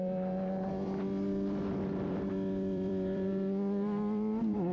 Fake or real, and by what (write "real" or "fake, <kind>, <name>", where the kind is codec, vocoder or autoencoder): fake, vocoder, BigVGAN v2